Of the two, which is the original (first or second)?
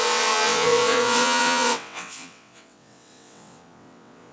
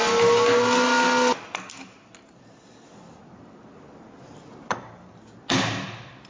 second